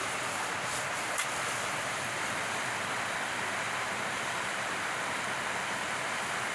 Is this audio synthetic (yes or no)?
yes